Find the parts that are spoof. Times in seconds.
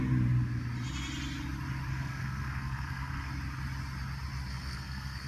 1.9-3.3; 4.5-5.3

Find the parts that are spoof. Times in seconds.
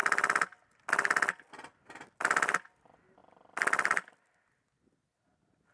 none